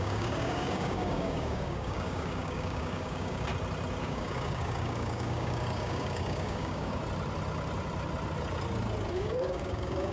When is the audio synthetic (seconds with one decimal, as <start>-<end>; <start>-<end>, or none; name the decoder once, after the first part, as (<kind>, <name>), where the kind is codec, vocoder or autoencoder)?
0.0-3.5 (codec, DAC); 4.0-7.0; 9.1-10.1